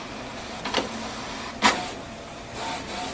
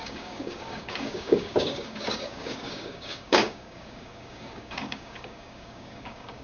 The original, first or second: first